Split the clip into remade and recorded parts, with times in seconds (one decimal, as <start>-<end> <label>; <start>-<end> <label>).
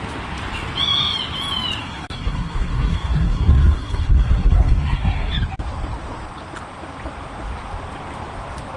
0.0-1.8 recorded; 1.8-5.3 remade; 5.3-8.8 recorded